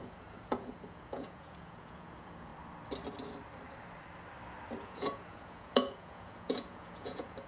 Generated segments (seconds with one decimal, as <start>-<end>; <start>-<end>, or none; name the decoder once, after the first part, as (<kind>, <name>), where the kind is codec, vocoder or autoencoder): 0.0-2.5 (vocoder, Vocos); 4.8-7.5

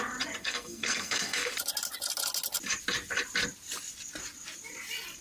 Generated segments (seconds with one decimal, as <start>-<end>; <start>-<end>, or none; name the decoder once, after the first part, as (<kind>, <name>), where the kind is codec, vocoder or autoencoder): 0.4-1.5 (codec, SNAC)

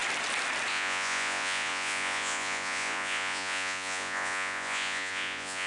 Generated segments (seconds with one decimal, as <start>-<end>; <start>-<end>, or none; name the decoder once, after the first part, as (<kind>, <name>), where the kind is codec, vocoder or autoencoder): 0.7-5.7 (vocoder, Vocos)

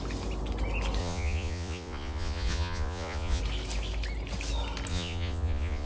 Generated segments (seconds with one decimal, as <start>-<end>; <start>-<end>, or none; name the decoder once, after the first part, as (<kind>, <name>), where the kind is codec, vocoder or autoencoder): 1.0-3.4 (vocoder, Vocos); 4.9-5.9

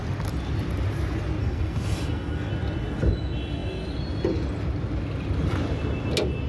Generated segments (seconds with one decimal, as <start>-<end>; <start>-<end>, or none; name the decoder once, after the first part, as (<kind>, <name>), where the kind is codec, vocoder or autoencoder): 1.4-2.5 (codec, SNAC)

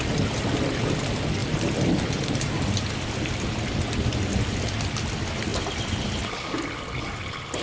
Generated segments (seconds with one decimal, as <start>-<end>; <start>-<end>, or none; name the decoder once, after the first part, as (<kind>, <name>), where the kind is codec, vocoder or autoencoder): 1.4-4.2 (vocoder, BigVGAN v2)